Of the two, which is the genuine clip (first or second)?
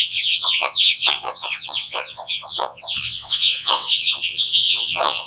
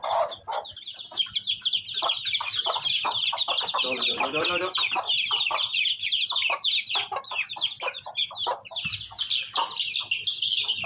second